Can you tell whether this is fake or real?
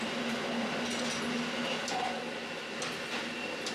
real